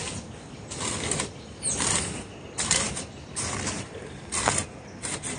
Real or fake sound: real